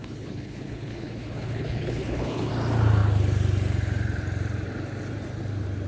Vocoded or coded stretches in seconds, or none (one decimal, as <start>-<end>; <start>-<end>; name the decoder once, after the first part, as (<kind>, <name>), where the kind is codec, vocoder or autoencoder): 0.0-2.5 (codec, HILCodec)